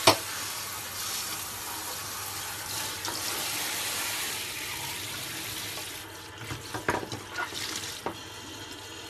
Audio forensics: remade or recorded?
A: recorded